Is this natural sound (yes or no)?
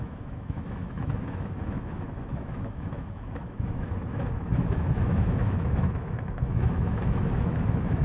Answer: no